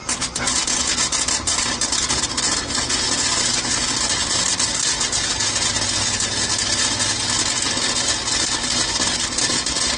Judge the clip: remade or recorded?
recorded